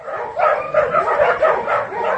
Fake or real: real